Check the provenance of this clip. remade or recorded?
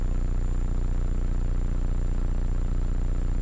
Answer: recorded